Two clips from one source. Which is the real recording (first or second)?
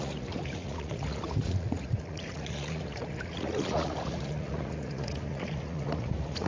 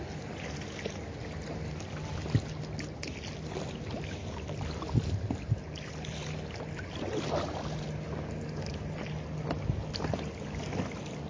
second